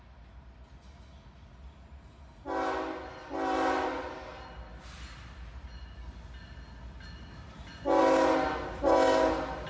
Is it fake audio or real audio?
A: real